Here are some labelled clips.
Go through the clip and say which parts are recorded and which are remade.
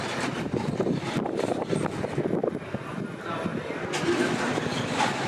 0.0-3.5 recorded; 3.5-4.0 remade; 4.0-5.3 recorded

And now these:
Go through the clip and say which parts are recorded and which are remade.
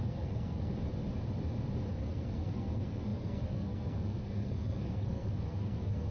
0.0-0.7 remade; 0.7-1.9 recorded; 1.9-6.1 remade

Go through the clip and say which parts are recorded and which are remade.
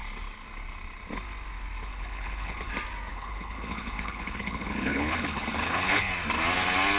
0.0-1.9 recorded; 1.9-2.7 remade; 2.7-3.1 recorded; 3.1-6.1 remade; 6.1-7.0 recorded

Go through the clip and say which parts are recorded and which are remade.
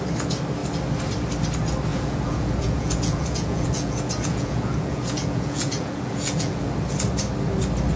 0.0-1.9 recorded; 1.9-6.7 remade; 6.7-8.0 recorded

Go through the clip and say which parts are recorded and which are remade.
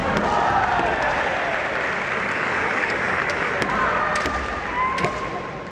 0.0-2.3 recorded; 2.3-3.5 remade; 3.5-5.7 recorded